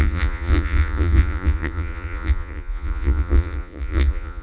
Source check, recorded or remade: remade